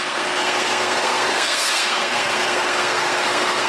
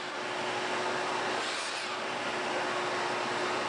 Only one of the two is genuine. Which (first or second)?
second